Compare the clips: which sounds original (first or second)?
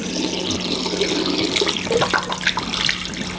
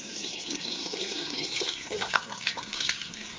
first